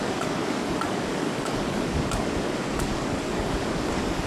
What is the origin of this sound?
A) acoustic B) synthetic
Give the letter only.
B